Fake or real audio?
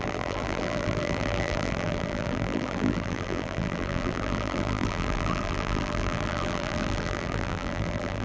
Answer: fake